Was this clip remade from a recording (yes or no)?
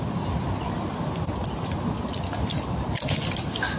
no